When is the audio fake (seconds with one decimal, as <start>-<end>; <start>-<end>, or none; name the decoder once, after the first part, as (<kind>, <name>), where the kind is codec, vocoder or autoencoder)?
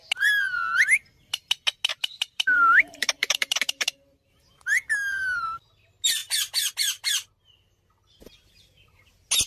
1.9-5.7 (vocoder, BigVGAN v2)